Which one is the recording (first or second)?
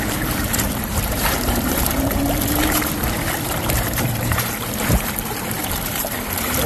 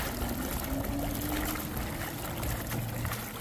second